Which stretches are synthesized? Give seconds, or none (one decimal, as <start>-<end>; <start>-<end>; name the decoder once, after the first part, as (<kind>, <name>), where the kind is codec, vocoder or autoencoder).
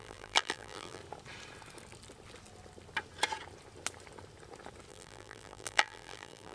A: 0.0-1.0 (vocoder, BigVGAN v2); 4.9-6.5